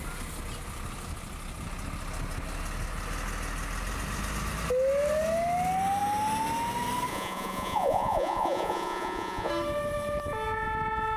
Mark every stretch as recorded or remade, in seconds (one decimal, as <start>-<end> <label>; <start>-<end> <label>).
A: 0.0-7.1 recorded; 7.1-9.5 remade; 9.5-11.2 recorded